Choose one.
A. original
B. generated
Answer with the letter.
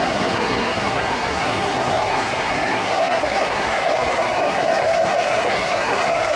B